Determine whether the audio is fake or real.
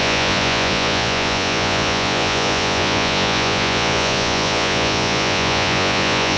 fake